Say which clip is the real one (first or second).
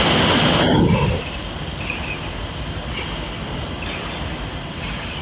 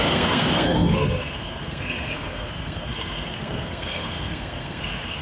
first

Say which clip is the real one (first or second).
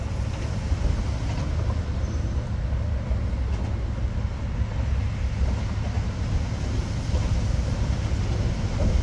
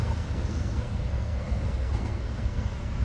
first